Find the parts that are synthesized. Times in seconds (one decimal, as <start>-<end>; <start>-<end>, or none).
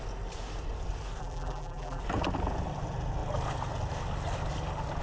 1.2-2.0